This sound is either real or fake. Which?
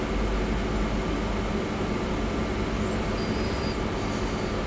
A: real